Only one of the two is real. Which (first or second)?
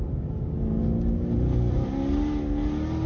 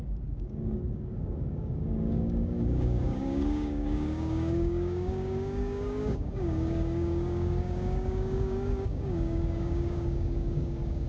first